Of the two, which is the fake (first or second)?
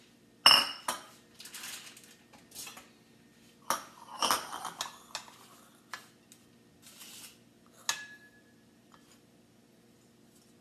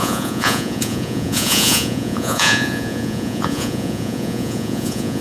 second